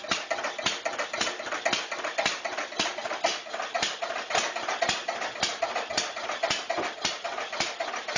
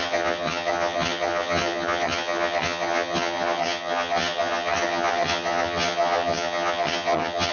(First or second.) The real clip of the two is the first